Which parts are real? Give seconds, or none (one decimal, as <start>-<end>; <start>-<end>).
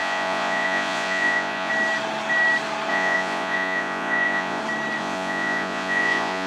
1.7-2.9; 4.6-5.0